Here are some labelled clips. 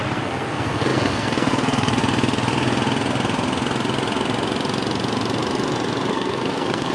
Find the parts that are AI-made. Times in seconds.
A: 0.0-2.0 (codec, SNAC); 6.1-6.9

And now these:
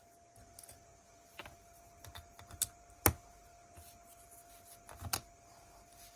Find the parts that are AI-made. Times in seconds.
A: none

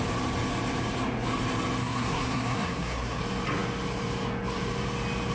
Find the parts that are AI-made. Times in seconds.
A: 1.8-3.2 (codec, SNAC)

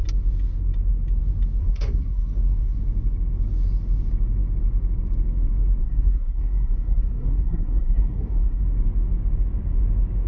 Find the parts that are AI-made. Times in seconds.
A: 1.6-2.8 (codec, SNAC); 5.8-8.6

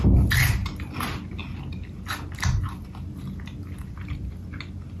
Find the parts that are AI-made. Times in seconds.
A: none